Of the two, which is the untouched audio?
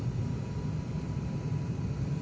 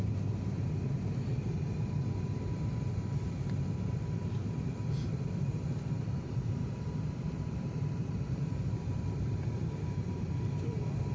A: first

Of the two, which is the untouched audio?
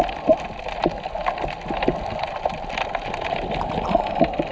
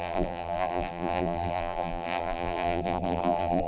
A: first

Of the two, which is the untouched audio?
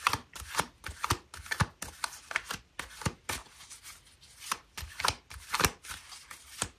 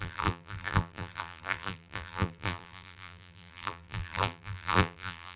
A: first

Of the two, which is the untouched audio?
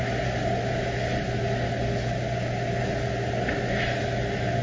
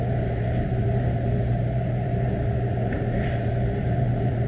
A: first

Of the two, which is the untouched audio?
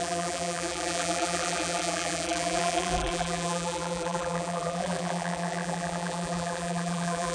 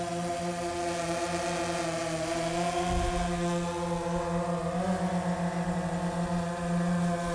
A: second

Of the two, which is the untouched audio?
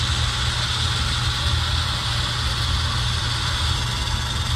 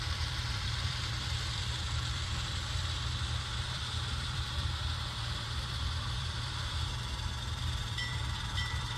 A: first